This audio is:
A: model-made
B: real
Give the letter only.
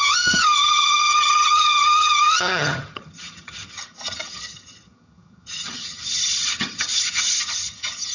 A